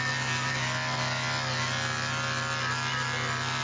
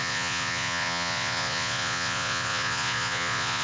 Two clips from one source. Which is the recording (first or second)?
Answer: first